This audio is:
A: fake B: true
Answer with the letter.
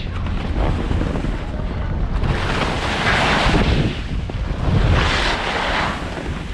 B